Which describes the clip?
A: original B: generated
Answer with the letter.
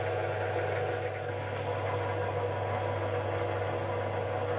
A